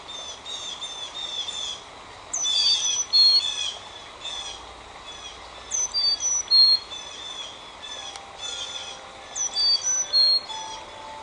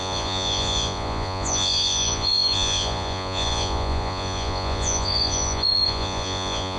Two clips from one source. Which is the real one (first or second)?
first